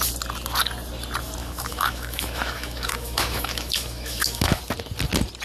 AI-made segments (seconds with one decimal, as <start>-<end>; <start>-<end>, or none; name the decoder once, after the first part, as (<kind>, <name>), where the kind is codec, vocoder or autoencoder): 1.4-4.6 (autoencoder, DAC-VAE)